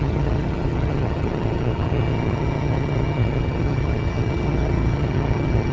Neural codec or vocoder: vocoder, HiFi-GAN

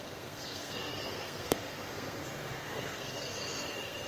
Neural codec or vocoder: codec, SNAC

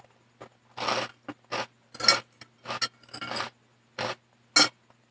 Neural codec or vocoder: none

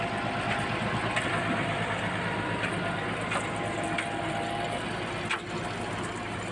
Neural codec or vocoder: none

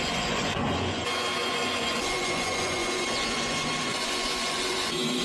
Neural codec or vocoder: vocoder, Vocos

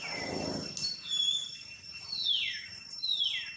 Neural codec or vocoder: none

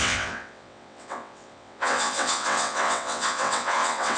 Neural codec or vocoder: vocoder, WaveNeXt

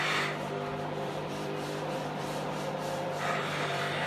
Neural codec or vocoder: vocoder, BigVGAN v2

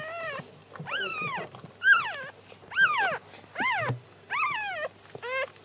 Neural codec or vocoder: none